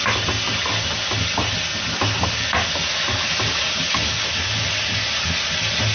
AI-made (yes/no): no